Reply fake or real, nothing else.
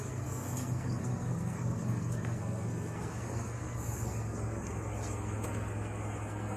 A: fake